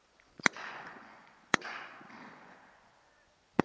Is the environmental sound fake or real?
fake